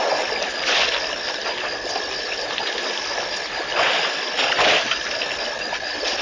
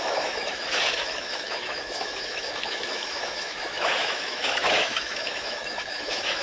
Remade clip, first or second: second